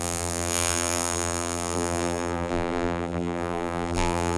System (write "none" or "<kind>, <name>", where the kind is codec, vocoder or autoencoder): vocoder, BigVGAN v2